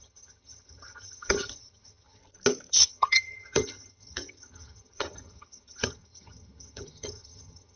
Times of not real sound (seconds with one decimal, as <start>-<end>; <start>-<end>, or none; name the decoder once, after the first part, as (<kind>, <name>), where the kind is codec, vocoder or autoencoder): 0.0-2.2 (vocoder, HiFi-GAN); 2.7-7.8